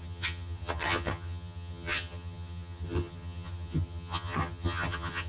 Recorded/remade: remade